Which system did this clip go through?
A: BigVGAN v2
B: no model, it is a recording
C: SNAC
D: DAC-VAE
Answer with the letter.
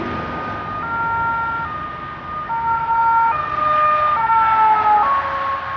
B